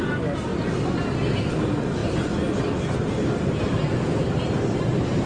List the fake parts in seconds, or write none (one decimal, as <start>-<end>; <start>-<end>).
none